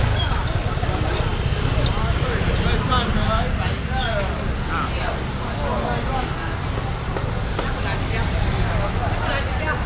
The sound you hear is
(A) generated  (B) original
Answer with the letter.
B